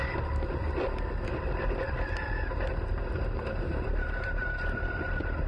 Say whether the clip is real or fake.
real